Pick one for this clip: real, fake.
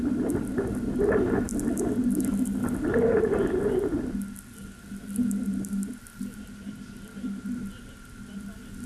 real